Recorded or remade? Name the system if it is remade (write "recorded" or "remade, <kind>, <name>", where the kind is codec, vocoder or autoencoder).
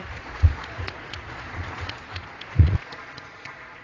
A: remade, vocoder, Vocos